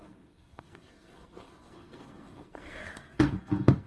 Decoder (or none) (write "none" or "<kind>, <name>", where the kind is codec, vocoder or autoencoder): codec, SNAC